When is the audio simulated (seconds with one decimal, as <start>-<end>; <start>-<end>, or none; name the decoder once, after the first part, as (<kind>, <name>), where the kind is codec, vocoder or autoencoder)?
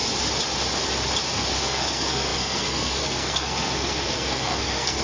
1.6-5.0 (codec, SNAC)